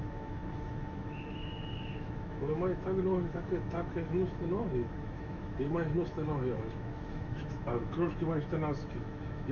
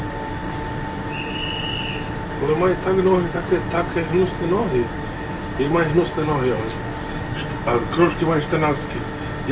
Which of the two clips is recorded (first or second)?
second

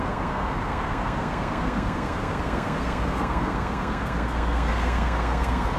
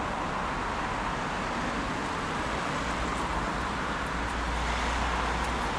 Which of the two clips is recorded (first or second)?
second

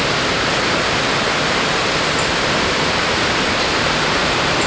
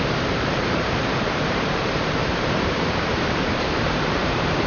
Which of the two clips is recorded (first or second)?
first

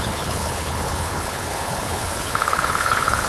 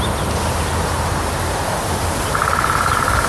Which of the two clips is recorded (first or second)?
second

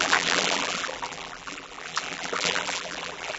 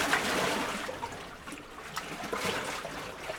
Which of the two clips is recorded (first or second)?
second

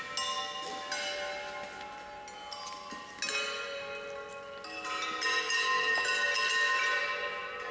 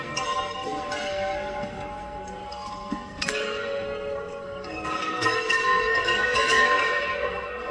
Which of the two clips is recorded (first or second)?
first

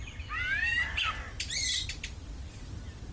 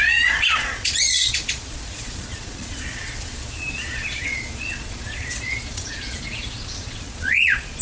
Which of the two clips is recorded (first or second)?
first